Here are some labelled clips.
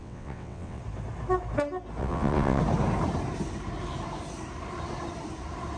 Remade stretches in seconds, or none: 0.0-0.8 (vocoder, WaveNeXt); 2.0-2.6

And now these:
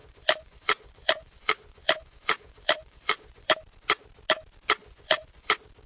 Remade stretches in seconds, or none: 0.0-3.5 (vocoder, Vocos); 4.8-5.5

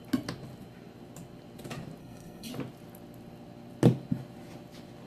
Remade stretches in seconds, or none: 2.0-2.5 (codec, SNAC)

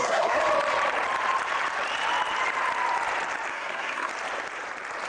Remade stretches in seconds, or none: 0.0-0.4 (codec, SNAC); 3.5-4.1

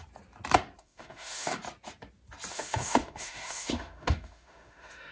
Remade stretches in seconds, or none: 0.8-1.6 (autoencoder, DAC-VAE); 2.5-5.1

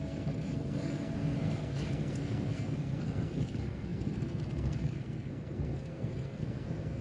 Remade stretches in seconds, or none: 0.0-7.0 (codec, SNAC)

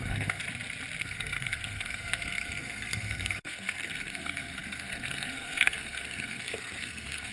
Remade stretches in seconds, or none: 0.0-0.4 (codec, SNAC); 1.0-7.3

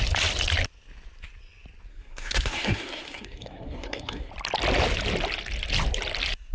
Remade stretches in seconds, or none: 1.9-4.3 (codec, SNAC)